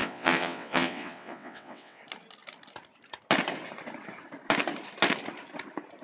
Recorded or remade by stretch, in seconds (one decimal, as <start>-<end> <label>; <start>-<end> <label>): 0.0-2.0 remade; 2.0-6.0 recorded